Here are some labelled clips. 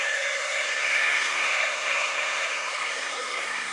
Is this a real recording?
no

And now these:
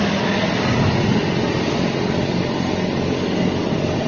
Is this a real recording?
yes